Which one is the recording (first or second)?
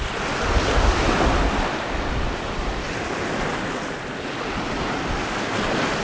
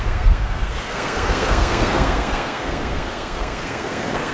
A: first